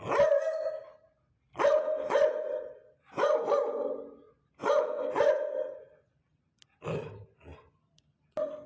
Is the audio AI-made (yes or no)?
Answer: no